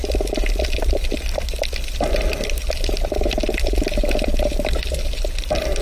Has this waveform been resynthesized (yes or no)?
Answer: no